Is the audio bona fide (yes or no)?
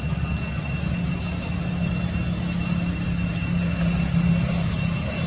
yes